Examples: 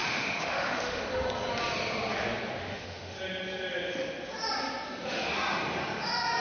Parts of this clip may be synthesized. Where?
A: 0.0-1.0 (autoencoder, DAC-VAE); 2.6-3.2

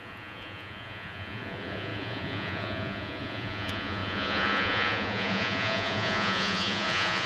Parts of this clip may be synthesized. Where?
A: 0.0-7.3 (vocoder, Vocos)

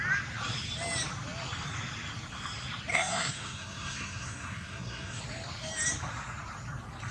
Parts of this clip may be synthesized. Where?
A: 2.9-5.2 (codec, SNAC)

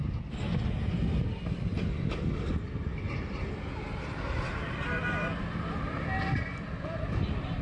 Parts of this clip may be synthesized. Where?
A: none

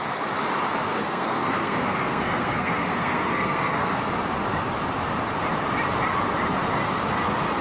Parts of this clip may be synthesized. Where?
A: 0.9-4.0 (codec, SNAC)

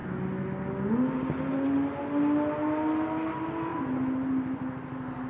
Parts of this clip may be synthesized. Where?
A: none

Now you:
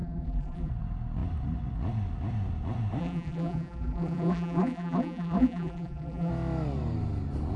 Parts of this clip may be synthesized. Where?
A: 0.0-0.7 (vocoder, BigVGAN v2); 3.0-6.3